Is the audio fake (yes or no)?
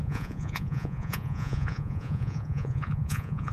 yes